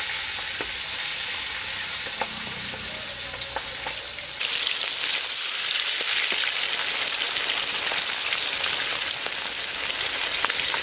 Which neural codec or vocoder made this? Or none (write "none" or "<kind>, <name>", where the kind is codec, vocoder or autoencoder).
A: none